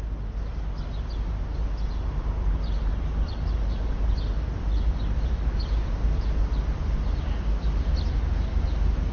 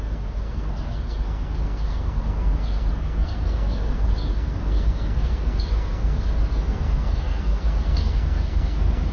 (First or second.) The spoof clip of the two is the second